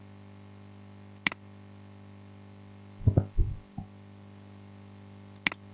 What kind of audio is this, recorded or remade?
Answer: recorded